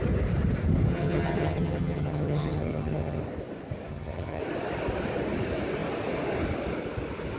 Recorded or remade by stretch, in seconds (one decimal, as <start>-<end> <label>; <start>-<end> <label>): 0.0-0.9 recorded; 0.9-3.2 remade; 3.2-3.9 recorded; 3.9-4.4 remade; 4.4-7.4 recorded

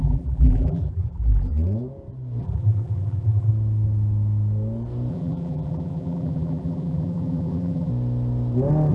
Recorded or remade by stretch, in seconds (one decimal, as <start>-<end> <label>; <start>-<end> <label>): 0.0-1.5 remade; 1.5-2.4 recorded; 2.4-3.5 remade; 3.5-5.1 recorded; 5.1-7.9 remade; 7.9-8.9 recorded